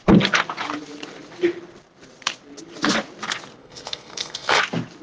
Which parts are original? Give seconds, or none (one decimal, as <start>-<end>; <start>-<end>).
0.0-3.6; 4.6-5.0